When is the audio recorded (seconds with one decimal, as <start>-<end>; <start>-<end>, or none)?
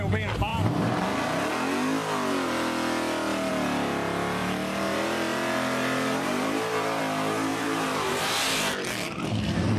0.0-4.4; 7.0-7.5; 8.2-9.8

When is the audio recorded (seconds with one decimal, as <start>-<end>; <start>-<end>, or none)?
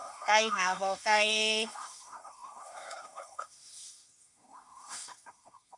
none